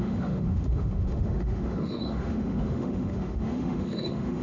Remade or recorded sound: remade